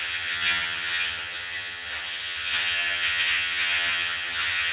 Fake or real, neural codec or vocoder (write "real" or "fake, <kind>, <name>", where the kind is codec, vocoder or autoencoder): fake, vocoder, HiFi-GAN